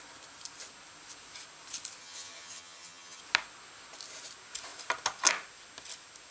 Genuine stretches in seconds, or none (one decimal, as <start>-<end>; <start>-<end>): 0.0-2.0; 3.2-6.3